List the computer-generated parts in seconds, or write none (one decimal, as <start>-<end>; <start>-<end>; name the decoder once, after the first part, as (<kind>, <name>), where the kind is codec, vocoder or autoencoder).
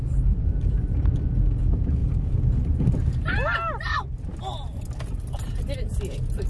none